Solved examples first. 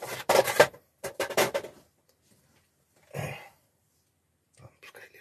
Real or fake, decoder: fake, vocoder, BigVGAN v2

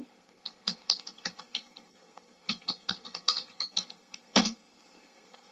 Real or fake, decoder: fake, codec, SNAC